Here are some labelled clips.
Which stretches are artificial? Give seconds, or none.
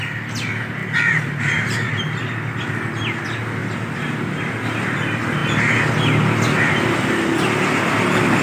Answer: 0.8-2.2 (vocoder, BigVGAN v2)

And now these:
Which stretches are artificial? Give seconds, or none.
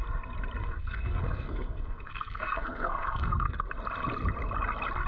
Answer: 0.6-3.7 (codec, SNAC)